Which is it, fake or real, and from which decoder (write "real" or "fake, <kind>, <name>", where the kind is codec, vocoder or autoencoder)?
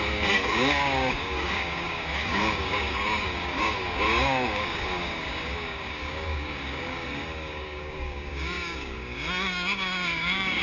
fake, codec, DAC